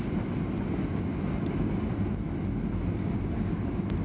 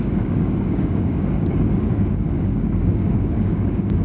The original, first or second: first